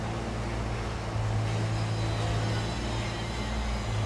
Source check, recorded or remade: recorded